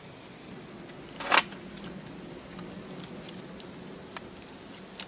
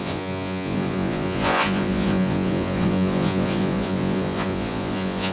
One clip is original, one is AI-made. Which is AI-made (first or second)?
second